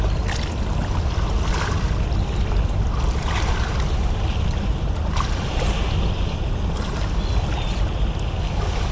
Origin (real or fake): real